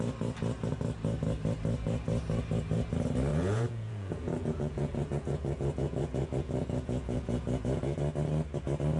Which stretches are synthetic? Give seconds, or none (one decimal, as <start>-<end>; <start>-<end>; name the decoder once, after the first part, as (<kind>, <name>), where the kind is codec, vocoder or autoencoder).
3.3-8.0 (vocoder, Vocos)